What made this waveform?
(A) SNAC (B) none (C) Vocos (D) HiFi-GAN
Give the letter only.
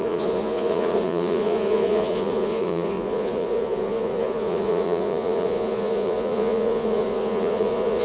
C